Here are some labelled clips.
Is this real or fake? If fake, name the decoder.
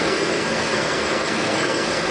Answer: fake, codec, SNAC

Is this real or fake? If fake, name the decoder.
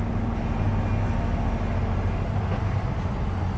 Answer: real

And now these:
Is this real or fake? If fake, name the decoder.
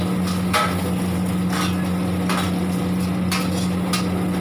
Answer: real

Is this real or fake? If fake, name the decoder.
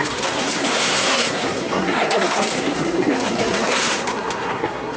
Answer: fake, codec, SNAC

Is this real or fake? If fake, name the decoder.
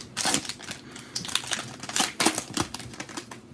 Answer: real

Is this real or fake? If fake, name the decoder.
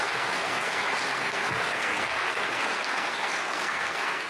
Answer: fake, codec, SNAC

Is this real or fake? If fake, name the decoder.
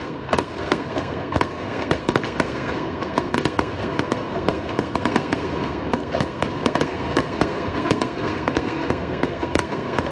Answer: fake, codec, SNAC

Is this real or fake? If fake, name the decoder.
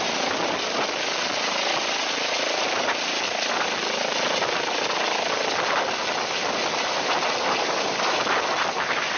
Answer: real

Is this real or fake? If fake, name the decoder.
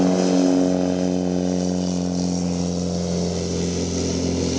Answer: real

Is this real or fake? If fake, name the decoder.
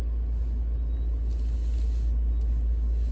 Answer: real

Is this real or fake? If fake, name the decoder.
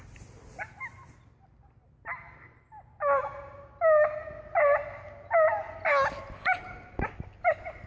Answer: real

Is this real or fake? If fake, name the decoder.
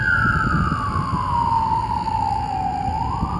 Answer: real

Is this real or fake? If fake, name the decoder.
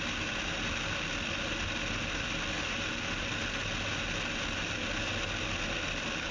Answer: real